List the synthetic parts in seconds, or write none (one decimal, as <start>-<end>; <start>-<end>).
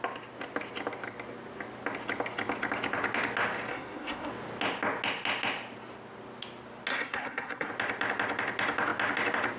3.7-4.3; 6.9-7.7